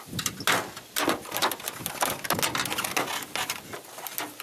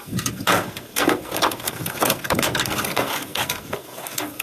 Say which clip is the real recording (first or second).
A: first